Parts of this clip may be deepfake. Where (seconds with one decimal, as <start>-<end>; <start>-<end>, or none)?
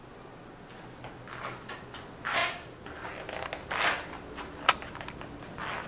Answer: none